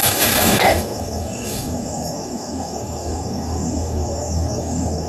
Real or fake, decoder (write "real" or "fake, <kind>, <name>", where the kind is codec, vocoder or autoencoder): fake, codec, DAC